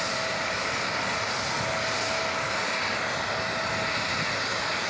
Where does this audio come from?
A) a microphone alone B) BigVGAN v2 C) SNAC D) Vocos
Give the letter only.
A